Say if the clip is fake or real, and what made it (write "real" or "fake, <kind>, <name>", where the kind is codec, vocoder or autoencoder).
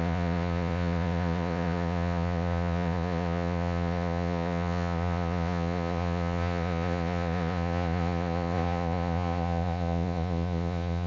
fake, vocoder, Vocos